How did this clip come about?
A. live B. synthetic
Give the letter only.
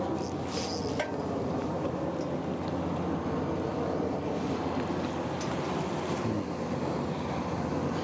A